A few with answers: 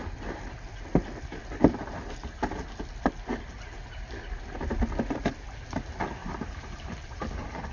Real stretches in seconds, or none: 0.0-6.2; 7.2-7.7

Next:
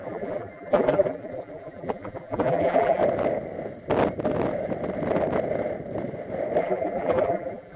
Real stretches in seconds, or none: 3.0-6.6

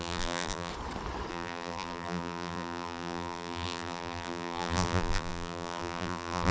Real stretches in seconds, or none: 0.7-1.3

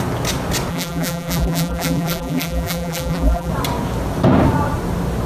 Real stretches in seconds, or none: 0.0-0.7; 3.5-5.3